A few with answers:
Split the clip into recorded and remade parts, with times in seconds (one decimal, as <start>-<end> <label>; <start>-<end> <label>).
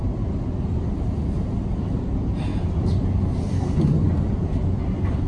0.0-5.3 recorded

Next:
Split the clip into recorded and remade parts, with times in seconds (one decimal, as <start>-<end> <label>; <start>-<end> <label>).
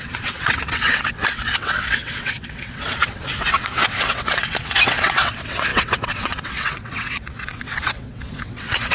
0.0-8.9 remade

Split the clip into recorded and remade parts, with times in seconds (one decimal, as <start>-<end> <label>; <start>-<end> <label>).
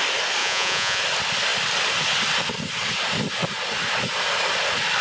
0.0-0.4 recorded; 0.4-1.0 remade; 1.0-5.0 recorded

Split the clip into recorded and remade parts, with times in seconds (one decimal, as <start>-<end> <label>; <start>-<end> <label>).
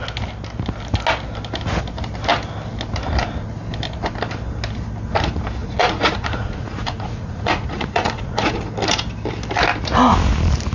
0.0-5.6 recorded; 5.6-8.7 remade; 8.7-10.7 recorded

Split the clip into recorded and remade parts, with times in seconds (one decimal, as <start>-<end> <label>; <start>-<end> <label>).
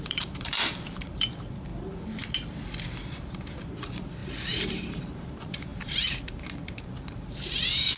0.0-1.7 remade; 1.7-3.6 recorded; 3.6-8.0 remade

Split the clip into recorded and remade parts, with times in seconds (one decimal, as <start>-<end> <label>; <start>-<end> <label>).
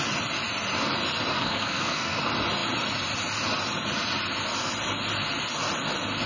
0.0-1.3 recorded; 1.3-2.2 remade; 2.2-6.3 recorded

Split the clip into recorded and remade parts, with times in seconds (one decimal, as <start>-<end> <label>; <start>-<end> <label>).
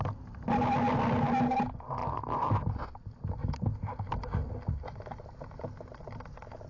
0.0-6.7 recorded